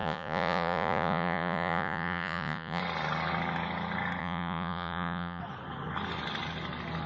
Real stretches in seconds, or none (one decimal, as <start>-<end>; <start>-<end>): 2.8-4.2; 5.4-7.1

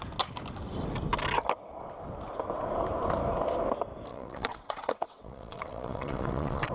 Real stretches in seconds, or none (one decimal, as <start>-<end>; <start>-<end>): 0.0-4.1

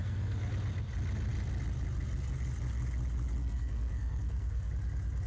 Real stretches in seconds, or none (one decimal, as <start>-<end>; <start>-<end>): 0.5-3.4; 4.7-5.3

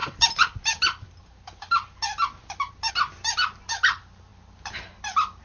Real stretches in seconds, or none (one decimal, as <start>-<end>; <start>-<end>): 0.0-5.4

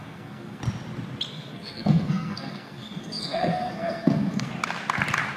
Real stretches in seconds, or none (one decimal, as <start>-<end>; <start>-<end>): 0.6-1.3; 4.5-5.4

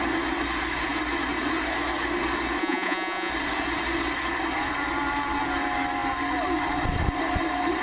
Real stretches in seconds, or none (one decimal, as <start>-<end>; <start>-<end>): 0.0-2.6; 3.3-7.8

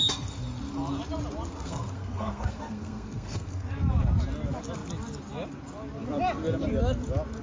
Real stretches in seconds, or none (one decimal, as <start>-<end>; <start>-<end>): 0.0-1.5; 3.7-7.4

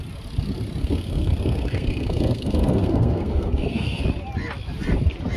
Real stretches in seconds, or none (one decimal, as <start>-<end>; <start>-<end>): 0.0-0.8; 4.0-5.4